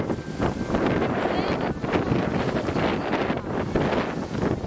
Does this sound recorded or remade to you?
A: recorded